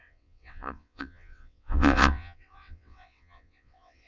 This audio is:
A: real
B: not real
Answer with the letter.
B